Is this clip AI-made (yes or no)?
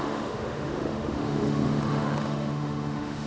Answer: yes